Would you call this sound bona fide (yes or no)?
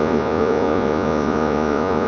no